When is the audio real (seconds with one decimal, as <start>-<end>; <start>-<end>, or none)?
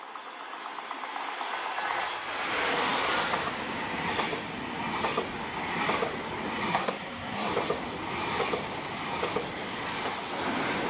0.0-6.7; 7.5-10.9